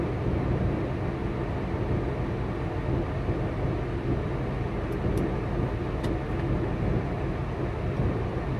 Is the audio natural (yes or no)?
yes